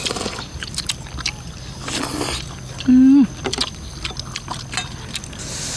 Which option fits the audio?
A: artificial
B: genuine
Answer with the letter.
B